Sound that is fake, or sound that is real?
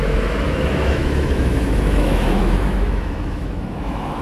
fake